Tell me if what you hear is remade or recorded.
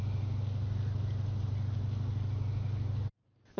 recorded